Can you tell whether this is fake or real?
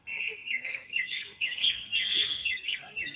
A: fake